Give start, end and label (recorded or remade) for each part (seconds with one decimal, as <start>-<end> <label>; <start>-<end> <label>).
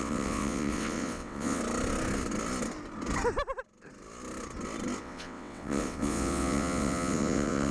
0.0-1.6 remade; 1.6-5.0 recorded; 5.0-7.7 remade